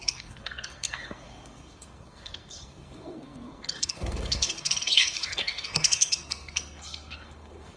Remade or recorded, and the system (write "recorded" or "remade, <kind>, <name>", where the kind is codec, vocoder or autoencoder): remade, codec, SNAC